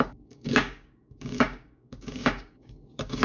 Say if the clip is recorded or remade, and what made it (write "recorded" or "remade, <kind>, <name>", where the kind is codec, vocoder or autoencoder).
remade, codec, DAC